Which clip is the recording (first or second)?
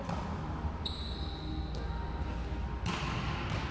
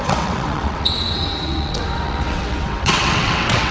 first